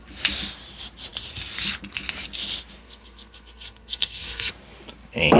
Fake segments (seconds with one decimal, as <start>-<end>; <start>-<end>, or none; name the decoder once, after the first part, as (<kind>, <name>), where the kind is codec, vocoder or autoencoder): 2.8-4.5 (codec, SNAC)